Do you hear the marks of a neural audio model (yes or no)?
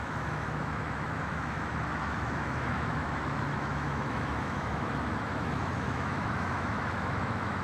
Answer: yes